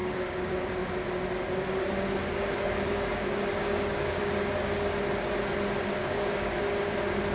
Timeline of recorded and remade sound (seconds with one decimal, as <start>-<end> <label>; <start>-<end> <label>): 0.0-0.5 remade; 0.5-2.2 recorded; 2.2-4.2 remade; 4.2-6.0 recorded; 6.0-6.6 remade; 6.6-7.3 recorded

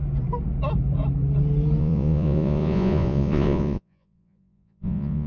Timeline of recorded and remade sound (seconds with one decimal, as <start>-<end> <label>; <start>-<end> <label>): 0.0-1.8 recorded; 1.8-5.3 remade

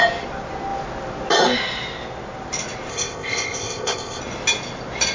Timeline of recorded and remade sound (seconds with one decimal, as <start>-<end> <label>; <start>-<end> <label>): 0.0-2.9 recorded; 2.9-4.2 remade; 4.2-5.1 recorded